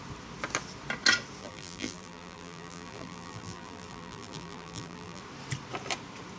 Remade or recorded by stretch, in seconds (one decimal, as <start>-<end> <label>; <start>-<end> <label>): 0.0-1.4 recorded; 1.4-5.2 remade; 5.2-6.4 recorded